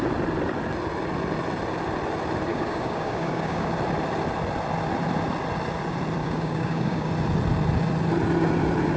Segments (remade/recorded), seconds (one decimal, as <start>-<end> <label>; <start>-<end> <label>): 0.0-2.5 recorded; 2.5-3.7 remade; 3.7-6.2 recorded; 6.2-7.1 remade; 7.1-9.0 recorded